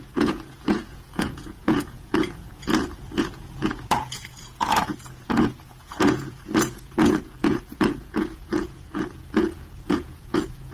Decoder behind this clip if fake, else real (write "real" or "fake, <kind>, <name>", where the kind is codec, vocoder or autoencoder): fake, vocoder, Vocos